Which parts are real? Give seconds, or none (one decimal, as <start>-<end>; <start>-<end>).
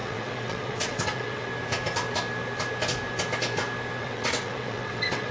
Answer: 1.5-4.0